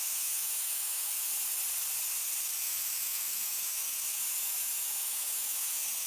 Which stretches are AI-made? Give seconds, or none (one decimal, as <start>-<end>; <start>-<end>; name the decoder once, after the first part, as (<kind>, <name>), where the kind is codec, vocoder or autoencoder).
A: 0.0-1.3 (autoencoder, DAC-VAE); 2.6-6.1